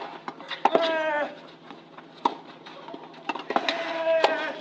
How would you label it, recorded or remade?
recorded